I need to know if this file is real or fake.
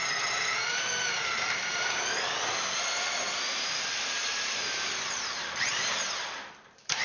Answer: fake